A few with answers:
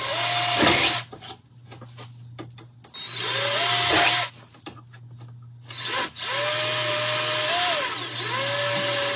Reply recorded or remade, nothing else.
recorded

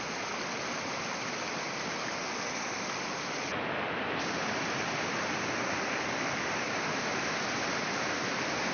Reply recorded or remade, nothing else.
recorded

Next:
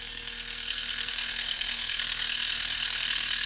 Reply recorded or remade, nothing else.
remade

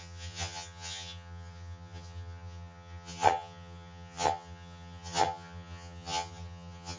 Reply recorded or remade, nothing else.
remade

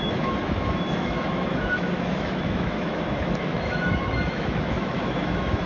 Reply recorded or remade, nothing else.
remade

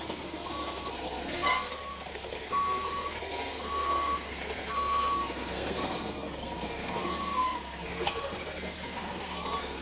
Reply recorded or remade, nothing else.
remade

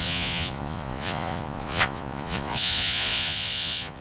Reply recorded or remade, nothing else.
remade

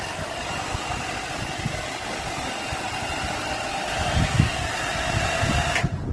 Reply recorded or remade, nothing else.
recorded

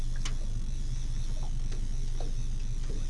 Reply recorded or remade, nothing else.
recorded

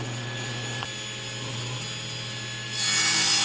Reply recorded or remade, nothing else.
recorded